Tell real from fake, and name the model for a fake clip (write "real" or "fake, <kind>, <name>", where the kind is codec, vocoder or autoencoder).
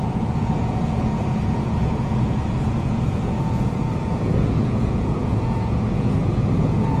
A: fake, vocoder, Vocos